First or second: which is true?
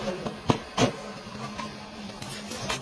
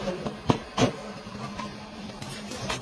first